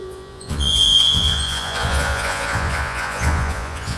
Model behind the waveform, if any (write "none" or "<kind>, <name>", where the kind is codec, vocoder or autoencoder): vocoder, Vocos